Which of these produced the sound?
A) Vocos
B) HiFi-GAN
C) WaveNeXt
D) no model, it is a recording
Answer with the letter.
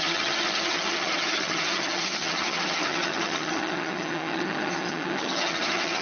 B